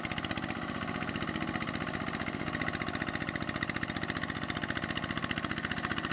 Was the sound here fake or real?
real